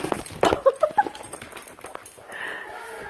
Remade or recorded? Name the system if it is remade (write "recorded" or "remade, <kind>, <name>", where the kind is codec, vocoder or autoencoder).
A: recorded